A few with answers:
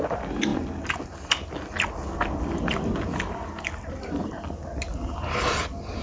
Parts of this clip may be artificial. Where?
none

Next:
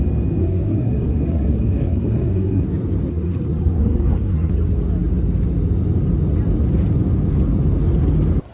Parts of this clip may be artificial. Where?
0.4-2.6 (codec, SNAC); 3.1-4.5